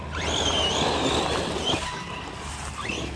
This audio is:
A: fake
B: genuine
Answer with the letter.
B